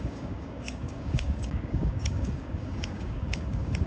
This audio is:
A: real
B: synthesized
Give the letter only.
B